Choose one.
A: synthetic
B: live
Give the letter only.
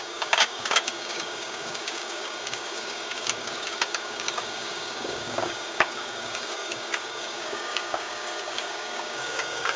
A